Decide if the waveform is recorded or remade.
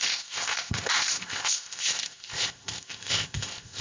remade